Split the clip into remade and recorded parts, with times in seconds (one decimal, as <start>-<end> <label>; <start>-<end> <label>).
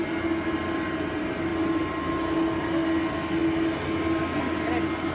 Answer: 0.0-5.1 recorded